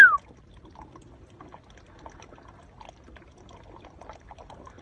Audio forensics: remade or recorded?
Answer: recorded